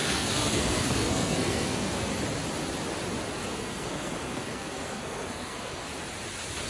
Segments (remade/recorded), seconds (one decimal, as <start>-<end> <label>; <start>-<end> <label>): 0.0-2.1 remade; 2.1-3.4 recorded; 3.4-5.9 remade; 5.9-6.7 recorded